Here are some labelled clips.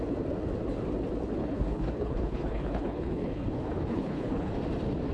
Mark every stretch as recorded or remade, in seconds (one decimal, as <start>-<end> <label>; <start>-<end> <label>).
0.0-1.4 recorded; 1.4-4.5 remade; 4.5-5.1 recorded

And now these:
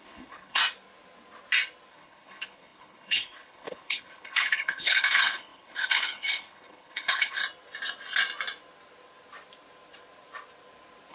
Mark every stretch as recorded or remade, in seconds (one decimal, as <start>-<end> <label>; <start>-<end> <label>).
0.0-0.6 remade; 0.6-1.9 recorded; 1.9-7.4 remade; 7.4-11.1 recorded

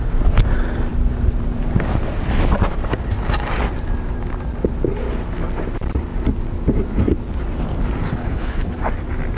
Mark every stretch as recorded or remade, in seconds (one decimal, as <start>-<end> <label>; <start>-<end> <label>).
0.0-8.2 recorded; 8.2-8.7 remade; 8.7-9.4 recorded

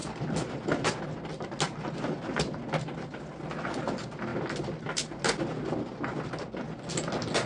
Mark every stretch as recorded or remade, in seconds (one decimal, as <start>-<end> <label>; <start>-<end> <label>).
0.0-7.5 recorded

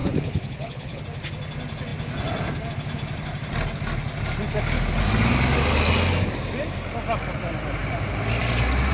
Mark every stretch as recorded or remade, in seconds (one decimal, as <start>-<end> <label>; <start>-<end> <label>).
0.0-1.0 remade; 1.0-8.9 recorded